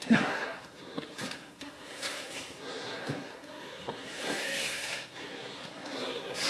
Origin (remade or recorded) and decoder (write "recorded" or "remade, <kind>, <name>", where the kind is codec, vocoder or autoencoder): remade, codec, SNAC